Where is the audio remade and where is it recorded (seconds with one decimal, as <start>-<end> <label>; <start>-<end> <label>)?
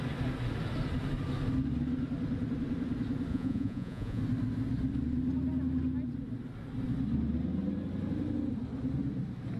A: 0.0-3.3 recorded; 3.3-4.2 remade; 4.2-9.6 recorded